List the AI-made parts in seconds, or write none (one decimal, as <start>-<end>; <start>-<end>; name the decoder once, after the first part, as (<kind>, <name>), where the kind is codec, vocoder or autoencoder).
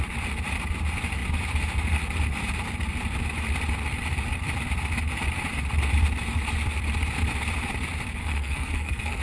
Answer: 8.2-9.2 (codec, SNAC)